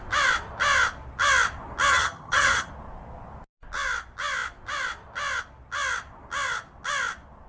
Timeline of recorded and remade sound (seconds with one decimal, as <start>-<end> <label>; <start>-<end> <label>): 0.0-1.9 recorded; 1.9-2.7 remade; 2.7-7.5 recorded